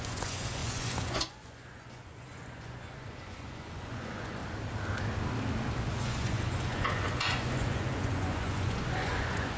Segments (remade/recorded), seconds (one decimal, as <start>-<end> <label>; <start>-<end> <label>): 0.0-4.4 remade; 4.4-6.0 recorded; 6.0-9.6 remade